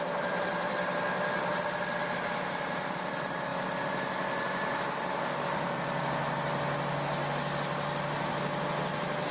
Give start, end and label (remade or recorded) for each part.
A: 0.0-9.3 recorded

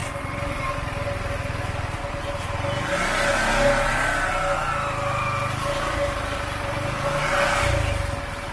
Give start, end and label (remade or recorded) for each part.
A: 0.0-8.5 recorded

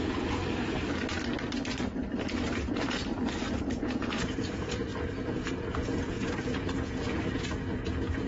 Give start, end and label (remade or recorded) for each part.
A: 0.0-0.4 remade; 0.4-3.8 recorded; 3.8-8.3 remade

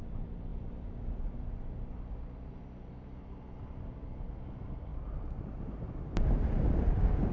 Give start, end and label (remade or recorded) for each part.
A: 0.0-4.9 recorded; 4.9-5.6 remade; 5.6-7.3 recorded

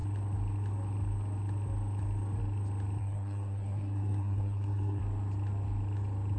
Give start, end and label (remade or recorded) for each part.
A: 0.0-3.0 recorded; 3.0-5.0 remade; 5.0-6.4 recorded

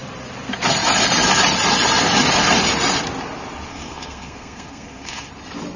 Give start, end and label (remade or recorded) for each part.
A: 0.0-3.7 recorded; 3.7-5.3 remade; 5.3-5.8 recorded

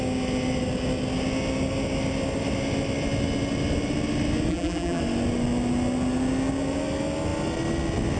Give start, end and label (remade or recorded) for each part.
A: 0.0-4.5 recorded; 4.5-5.0 remade; 5.0-8.2 recorded

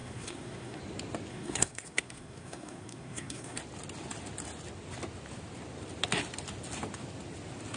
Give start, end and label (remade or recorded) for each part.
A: 0.0-0.8 remade; 0.8-1.3 recorded; 1.3-3.6 remade; 3.6-7.8 recorded